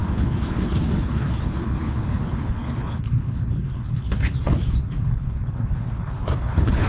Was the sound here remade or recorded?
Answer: remade